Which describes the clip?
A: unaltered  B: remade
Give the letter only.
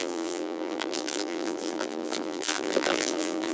B